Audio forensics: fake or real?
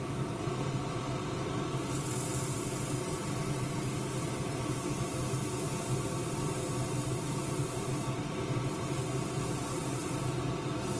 real